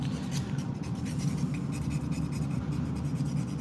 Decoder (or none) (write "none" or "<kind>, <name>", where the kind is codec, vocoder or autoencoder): none